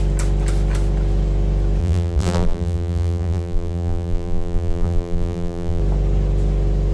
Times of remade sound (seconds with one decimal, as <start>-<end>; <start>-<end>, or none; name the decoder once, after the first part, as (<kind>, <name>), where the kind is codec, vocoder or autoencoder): 1.8-5.8 (vocoder, BigVGAN v2)